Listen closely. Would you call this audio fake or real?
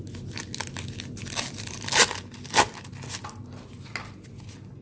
real